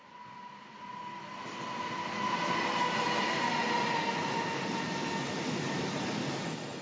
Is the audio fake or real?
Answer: real